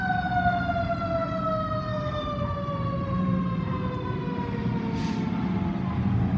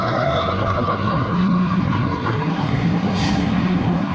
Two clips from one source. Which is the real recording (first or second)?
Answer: first